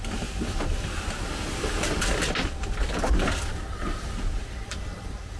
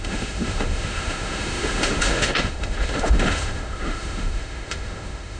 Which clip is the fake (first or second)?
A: second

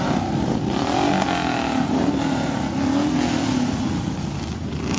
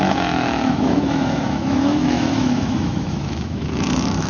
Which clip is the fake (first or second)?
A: second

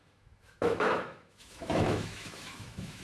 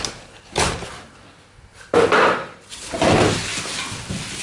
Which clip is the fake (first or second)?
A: first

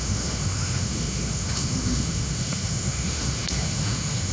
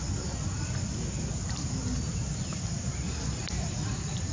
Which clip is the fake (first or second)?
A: first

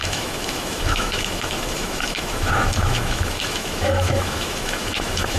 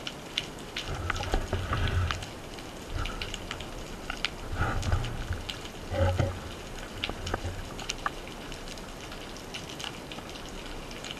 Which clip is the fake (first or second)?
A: first